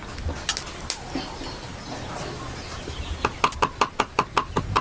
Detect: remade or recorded recorded